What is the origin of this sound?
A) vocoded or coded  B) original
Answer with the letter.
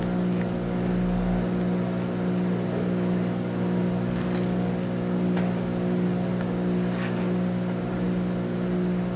B